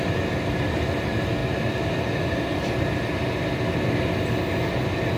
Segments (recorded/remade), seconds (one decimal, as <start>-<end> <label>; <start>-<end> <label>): 0.0-5.2 recorded